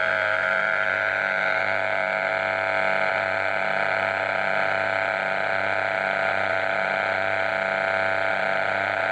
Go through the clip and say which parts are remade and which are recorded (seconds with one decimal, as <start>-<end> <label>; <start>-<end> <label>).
0.0-2.3 remade; 2.3-3.1 recorded; 3.1-7.5 remade; 7.5-8.3 recorded; 8.3-9.1 remade